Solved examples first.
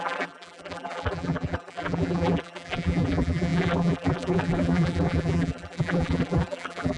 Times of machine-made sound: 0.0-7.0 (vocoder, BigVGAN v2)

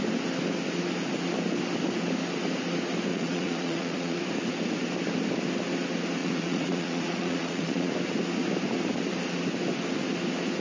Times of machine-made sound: 3.1-4.2 (vocoder, Vocos); 6.2-7.9

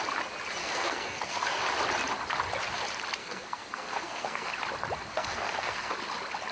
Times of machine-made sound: 0.6-1.6 (codec, SNAC); 3.2-4.5; 5.1-5.9

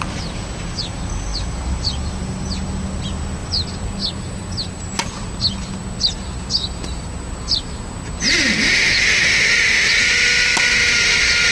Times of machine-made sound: none

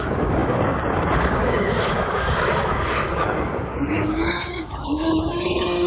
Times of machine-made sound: 0.0-5.9 (codec, DAC)

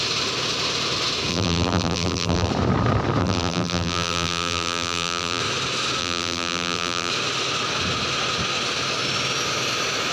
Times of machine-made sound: 1.3-2.5 (vocoder, BigVGAN v2); 3.2-5.4; 6.0-7.1

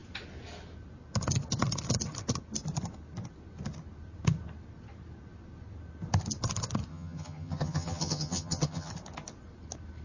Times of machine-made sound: 6.9-8.9 (vocoder, HiFi-GAN)